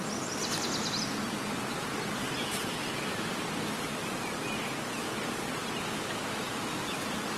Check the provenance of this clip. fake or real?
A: real